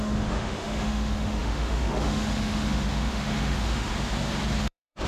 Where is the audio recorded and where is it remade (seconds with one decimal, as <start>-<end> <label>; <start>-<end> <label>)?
0.0-3.9 remade; 3.9-4.6 recorded; 4.6-5.1 remade